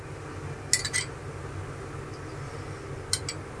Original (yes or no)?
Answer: yes